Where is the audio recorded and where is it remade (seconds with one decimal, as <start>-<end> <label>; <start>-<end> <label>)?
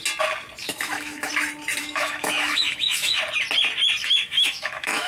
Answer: 0.0-0.6 recorded; 0.6-1.3 remade; 1.3-1.8 recorded; 1.8-3.2 remade; 3.2-4.0 recorded; 4.0-5.1 remade